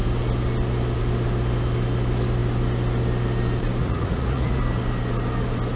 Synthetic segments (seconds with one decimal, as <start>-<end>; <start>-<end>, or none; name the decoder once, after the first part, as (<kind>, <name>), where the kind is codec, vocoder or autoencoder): 3.8-4.6 (vocoder, Vocos)